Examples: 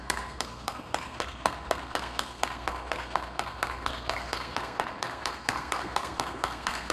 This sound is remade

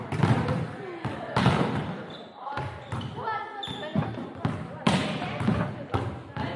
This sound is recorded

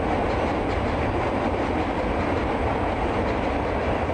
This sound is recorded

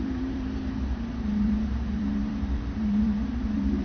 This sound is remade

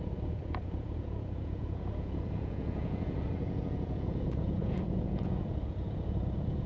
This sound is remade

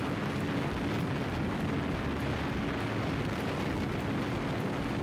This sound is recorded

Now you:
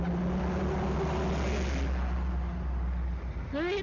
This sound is recorded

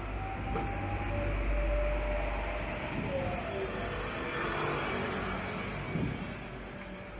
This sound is recorded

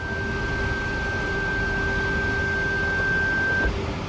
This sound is recorded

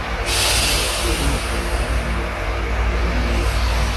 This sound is recorded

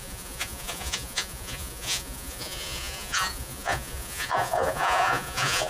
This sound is remade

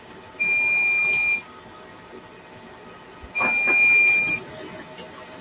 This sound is recorded